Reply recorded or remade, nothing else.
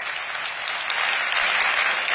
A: recorded